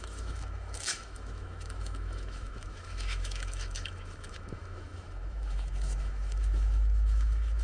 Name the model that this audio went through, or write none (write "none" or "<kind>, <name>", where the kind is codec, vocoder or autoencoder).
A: autoencoder, DAC-VAE